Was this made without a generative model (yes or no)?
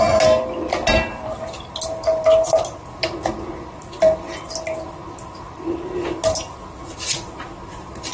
yes